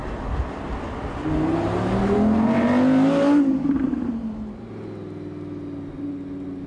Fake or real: real